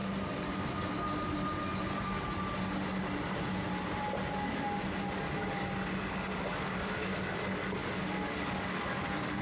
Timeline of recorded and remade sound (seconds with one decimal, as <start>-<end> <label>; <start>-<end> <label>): 0.0-4.3 recorded; 4.3-9.4 remade